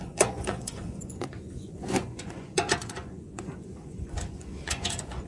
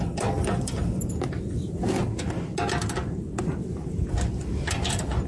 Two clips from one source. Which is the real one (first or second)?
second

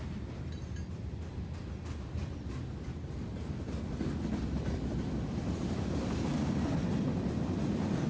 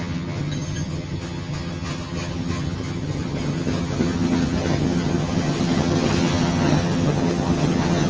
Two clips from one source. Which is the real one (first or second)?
first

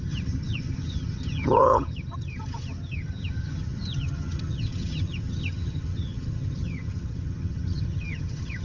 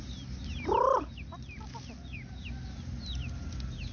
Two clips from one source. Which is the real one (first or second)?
second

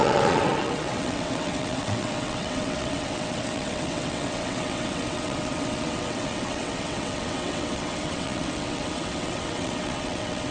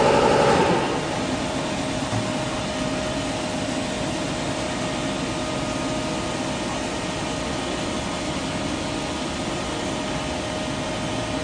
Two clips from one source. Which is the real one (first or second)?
second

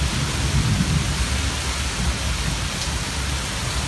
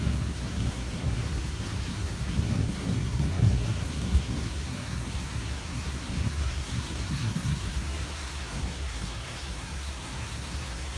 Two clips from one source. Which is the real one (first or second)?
first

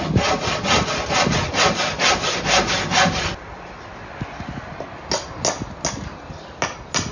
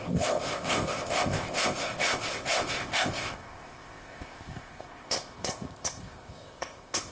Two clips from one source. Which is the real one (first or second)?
first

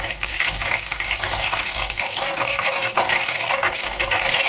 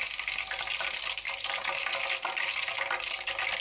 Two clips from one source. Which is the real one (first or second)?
second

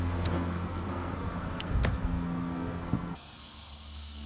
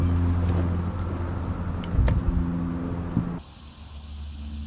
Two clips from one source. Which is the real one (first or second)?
second